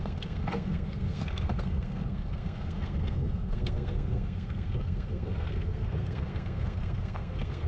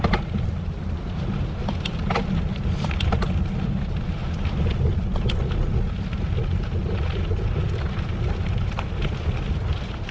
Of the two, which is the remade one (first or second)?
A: first